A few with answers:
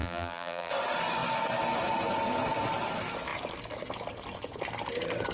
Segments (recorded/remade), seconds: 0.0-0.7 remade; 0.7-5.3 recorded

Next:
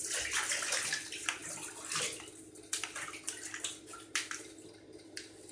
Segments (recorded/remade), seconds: 0.0-5.5 recorded

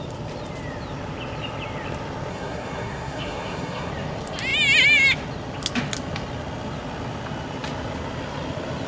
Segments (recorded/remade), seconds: 0.0-2.3 recorded; 2.3-3.9 remade; 3.9-8.9 recorded

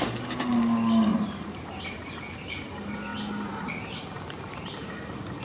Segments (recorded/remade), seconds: 0.0-1.1 recorded; 1.1-1.8 remade; 1.8-5.4 recorded

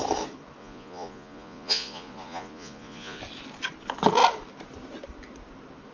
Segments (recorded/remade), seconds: 0.0-0.6 recorded; 0.6-3.2 remade; 3.2-5.9 recorded

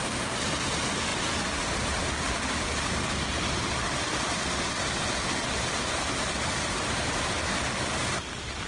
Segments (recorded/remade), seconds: 0.0-8.7 recorded

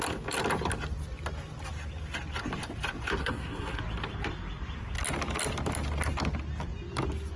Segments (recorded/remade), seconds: 0.0-3.2 recorded; 3.2-3.8 remade; 3.8-7.4 recorded